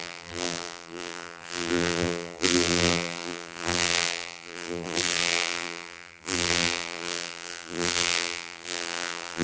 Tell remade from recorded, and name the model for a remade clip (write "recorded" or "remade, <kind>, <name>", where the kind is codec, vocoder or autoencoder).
remade, vocoder, BigVGAN v2